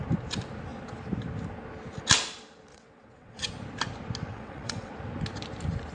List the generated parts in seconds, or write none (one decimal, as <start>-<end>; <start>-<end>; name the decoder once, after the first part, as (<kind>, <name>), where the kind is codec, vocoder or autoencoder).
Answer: 2.7-3.5 (vocoder, WaveNeXt); 4.3-4.9